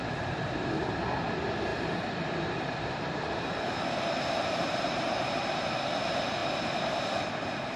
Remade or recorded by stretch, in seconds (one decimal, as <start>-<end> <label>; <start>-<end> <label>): 0.0-1.7 recorded; 1.7-5.7 remade; 5.7-6.4 recorded; 6.4-7.0 remade; 7.0-7.8 recorded